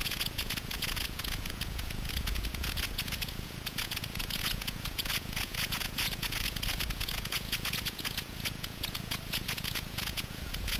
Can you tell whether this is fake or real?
fake